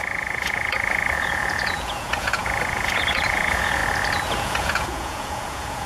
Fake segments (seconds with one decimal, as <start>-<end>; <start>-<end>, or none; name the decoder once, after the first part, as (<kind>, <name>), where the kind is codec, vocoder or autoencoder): 0.0-3.8 (vocoder, Vocos); 4.3-5.9